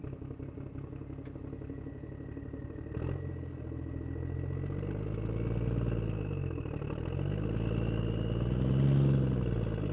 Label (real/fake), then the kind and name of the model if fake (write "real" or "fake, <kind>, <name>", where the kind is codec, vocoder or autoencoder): real